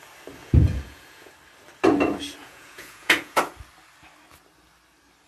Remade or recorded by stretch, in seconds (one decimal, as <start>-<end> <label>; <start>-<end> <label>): 0.0-0.4 recorded; 0.4-1.3 remade; 1.3-2.4 recorded; 2.4-3.4 remade; 3.4-5.3 recorded